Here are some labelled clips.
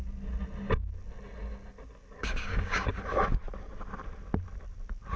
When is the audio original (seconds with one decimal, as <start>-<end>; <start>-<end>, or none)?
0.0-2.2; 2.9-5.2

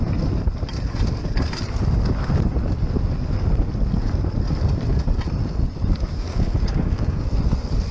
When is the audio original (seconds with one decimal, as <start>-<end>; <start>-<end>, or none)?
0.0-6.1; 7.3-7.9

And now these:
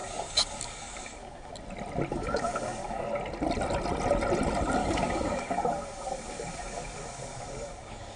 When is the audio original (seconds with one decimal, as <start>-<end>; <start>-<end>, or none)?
1.5-2.1; 3.1-4.8